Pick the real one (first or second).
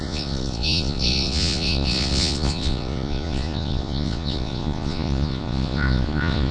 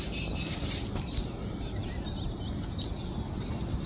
second